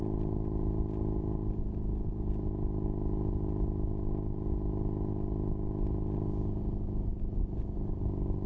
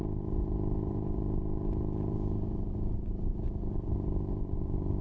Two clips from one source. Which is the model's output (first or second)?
second